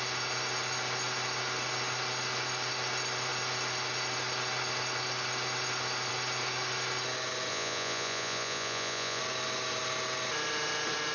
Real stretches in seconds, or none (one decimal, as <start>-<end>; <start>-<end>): 0.0-7.5; 9.2-11.1